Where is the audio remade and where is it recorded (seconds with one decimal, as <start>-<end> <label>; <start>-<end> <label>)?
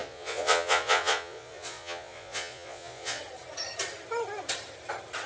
0.0-3.2 remade; 3.2-5.3 recorded